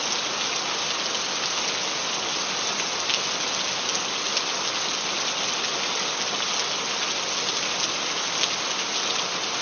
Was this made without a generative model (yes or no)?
yes